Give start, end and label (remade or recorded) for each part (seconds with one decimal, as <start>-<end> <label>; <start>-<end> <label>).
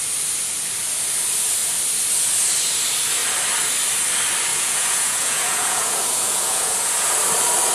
0.0-4.5 recorded; 4.5-7.1 remade; 7.1-7.7 recorded